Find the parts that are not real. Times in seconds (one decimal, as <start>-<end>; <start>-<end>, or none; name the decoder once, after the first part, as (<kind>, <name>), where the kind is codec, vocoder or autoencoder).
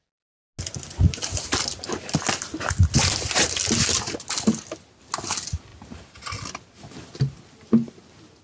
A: none